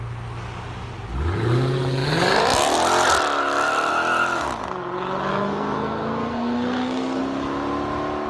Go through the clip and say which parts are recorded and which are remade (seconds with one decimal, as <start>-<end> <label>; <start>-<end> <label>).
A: 0.0-5.3 recorded; 5.3-7.2 remade; 7.2-8.3 recorded

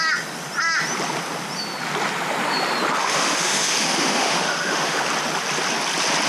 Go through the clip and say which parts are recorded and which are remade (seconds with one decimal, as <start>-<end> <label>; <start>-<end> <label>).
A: 0.0-3.0 recorded; 3.0-5.0 remade; 5.0-6.3 recorded

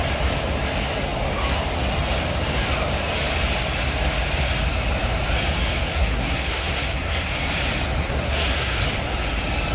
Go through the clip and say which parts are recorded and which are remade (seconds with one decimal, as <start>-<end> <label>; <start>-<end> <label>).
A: 0.0-5.9 recorded; 5.9-7.3 remade; 7.3-8.0 recorded; 8.0-8.8 remade; 8.8-9.7 recorded

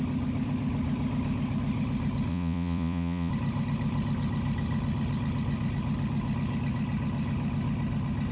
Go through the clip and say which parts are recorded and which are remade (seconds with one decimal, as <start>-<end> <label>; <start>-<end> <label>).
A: 0.0-2.3 recorded; 2.3-3.3 remade; 3.3-8.3 recorded

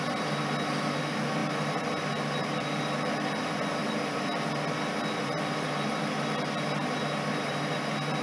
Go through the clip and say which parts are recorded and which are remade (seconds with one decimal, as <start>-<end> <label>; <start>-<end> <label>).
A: 0.0-1.4 recorded; 1.4-3.4 remade; 3.4-3.8 recorded; 3.8-7.5 remade; 7.5-8.2 recorded

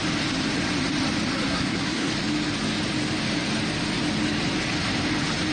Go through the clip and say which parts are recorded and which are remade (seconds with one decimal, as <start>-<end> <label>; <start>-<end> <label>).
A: 0.0-1.5 recorded; 1.5-2.1 remade; 2.1-5.5 recorded

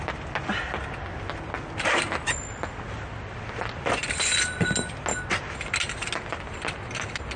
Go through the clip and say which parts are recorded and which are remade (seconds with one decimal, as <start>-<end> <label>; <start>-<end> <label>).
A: 0.0-7.4 recorded